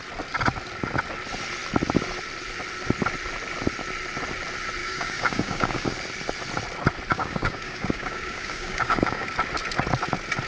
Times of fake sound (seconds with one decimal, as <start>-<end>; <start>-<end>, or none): 4.8-5.9; 7.1-9.3